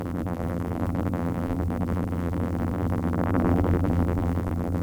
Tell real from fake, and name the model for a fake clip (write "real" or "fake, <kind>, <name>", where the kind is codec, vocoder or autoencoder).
fake, vocoder, BigVGAN v2